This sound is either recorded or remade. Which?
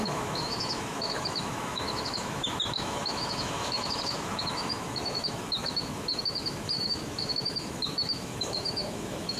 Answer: remade